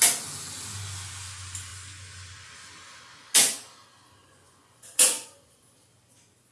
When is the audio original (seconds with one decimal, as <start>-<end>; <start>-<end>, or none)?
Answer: 0.0-4.2; 5.6-6.5